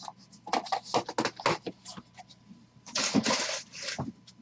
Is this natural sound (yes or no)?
yes